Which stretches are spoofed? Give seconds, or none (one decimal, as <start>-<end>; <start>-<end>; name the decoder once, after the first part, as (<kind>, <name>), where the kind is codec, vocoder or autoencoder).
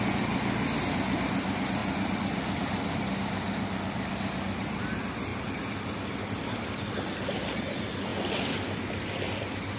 1.8-4.8 (vocoder, BigVGAN v2)